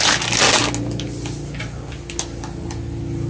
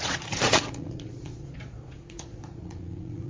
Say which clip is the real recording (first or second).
first